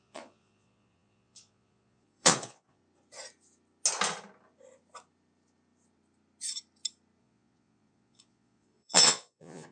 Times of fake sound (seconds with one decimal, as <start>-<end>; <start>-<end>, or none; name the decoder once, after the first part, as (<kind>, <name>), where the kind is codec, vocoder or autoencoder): 0.0-2.8 (vocoder, Vocos); 7.2-9.7